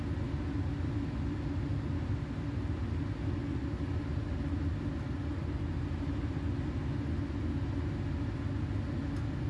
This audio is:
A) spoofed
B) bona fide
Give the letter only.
B